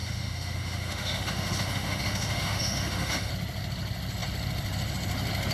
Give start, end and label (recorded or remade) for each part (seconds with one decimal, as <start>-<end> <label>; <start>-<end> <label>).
0.0-3.3 remade; 3.3-5.5 recorded